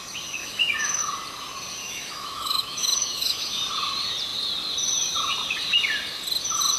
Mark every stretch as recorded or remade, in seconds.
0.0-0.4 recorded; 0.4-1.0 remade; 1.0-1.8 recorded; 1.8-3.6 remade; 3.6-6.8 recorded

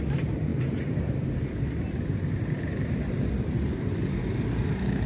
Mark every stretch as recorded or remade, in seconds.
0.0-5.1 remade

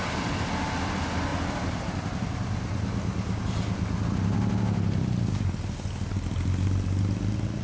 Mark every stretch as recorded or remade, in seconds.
0.0-7.6 recorded

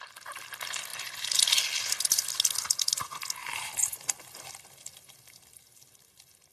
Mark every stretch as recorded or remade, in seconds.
0.0-3.4 recorded; 3.4-6.5 remade

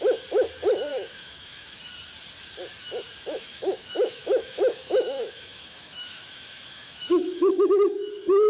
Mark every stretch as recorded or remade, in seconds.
0.0-0.9 recorded; 0.9-1.9 remade; 1.9-3.5 recorded; 3.5-8.1 remade; 8.1-8.5 recorded

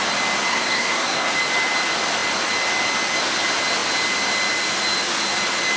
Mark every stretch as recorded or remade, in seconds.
0.0-0.5 recorded; 0.5-1.3 remade; 1.3-5.8 recorded

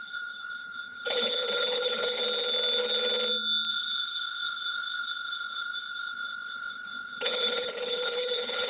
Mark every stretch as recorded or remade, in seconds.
0.0-2.2 remade; 2.2-3.7 recorded; 3.7-8.7 remade